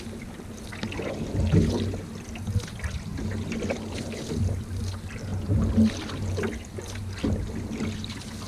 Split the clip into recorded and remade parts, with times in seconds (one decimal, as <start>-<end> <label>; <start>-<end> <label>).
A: 0.0-8.5 recorded